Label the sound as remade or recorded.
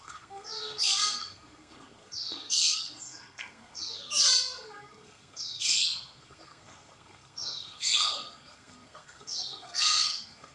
remade